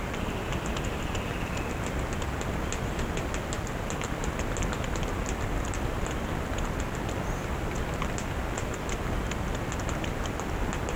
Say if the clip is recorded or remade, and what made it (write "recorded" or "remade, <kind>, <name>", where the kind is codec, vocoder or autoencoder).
recorded